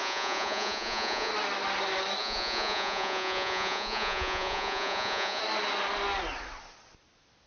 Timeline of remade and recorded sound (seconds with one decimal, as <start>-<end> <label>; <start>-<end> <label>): 0.0-1.3 remade; 1.3-2.2 recorded; 2.2-5.4 remade; 5.4-7.5 recorded